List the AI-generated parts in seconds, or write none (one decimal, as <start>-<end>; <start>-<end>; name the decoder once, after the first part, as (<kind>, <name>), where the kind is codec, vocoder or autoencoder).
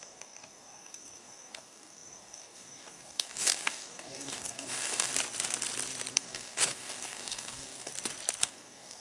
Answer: 0.0-5.1 (codec, DAC); 6.1-7.9; 8.4-9.0